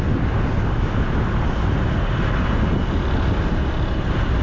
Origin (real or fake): real